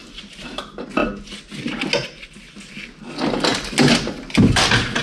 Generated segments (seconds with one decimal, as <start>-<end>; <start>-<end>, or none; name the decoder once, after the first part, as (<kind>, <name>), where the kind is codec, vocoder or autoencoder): none